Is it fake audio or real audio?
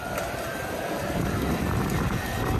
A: real